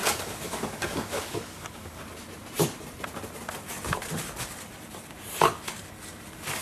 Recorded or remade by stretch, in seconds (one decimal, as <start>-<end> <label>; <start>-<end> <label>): 0.0-2.0 remade; 2.0-6.6 recorded